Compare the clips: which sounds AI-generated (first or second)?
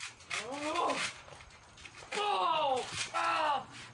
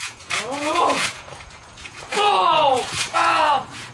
second